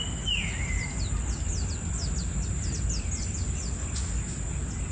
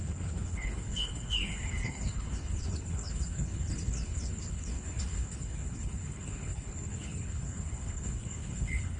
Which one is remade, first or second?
second